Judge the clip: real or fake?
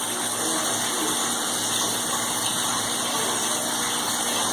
real